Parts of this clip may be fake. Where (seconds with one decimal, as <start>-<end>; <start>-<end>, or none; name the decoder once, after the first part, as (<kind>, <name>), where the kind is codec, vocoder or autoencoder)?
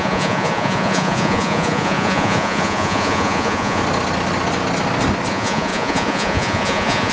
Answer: 0.0-3.8 (vocoder, Vocos); 5.3-7.1